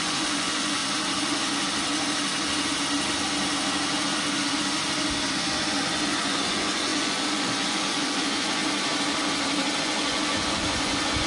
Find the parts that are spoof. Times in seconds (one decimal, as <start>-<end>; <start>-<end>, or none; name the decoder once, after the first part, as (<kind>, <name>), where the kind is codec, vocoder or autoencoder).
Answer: 0.0-0.8 (vocoder, Vocos); 5.3-8.6; 9.8-11.3